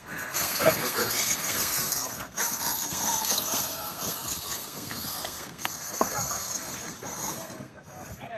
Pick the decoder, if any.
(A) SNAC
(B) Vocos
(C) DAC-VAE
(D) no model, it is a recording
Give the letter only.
A